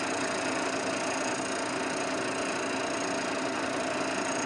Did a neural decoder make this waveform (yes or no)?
no